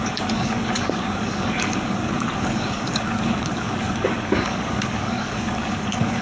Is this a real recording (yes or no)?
no